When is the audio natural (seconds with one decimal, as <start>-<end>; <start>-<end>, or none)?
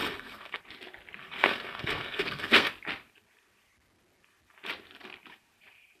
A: 0.6-1.2; 2.7-6.0